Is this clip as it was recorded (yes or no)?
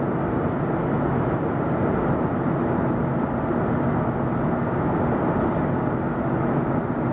yes